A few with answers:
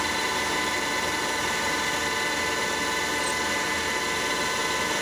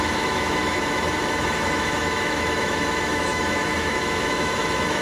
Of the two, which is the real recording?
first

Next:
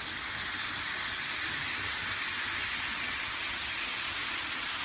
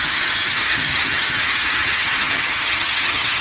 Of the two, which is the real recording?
first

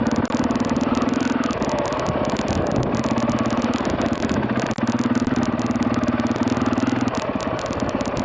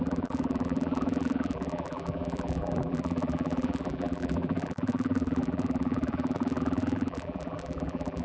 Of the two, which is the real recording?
first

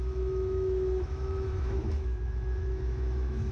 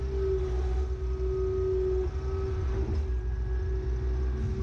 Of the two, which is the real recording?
second